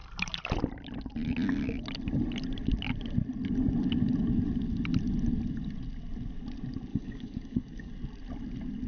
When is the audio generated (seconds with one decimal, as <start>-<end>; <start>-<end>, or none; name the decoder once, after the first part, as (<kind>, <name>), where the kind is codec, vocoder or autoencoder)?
6.9-7.9 (codec, DAC)